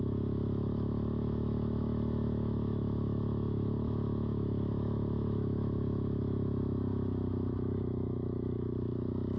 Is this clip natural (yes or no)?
no